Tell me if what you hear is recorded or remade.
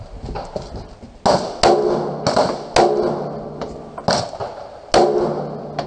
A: recorded